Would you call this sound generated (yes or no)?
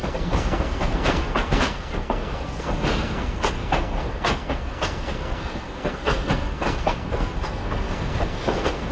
yes